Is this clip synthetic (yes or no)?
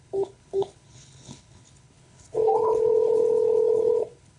yes